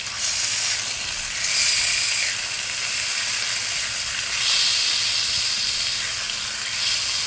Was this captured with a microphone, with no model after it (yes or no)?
yes